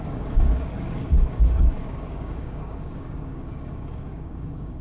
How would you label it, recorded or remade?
remade